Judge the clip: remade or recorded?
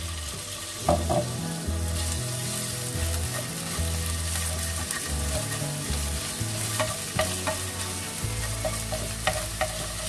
recorded